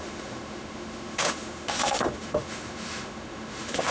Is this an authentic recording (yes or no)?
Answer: no